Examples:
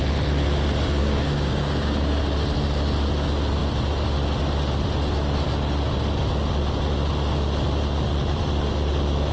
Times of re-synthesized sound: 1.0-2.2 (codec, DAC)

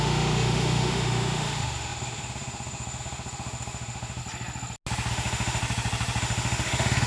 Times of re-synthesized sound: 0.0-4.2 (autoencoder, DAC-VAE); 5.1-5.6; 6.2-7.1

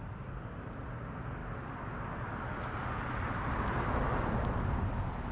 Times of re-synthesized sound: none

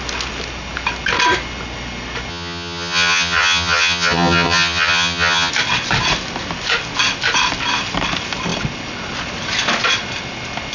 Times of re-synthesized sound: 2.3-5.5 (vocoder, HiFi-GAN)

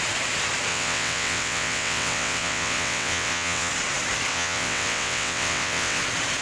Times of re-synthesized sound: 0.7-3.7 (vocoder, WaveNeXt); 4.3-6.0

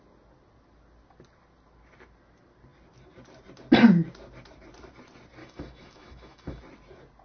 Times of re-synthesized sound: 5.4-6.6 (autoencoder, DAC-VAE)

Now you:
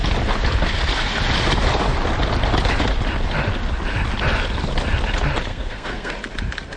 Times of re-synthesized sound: 5.5-6.1 (codec, SNAC)

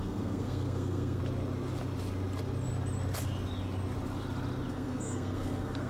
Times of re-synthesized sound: 0.0-1.2 (codec, SNAC); 4.7-5.9